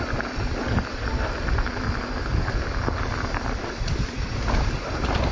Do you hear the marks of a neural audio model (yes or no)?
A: no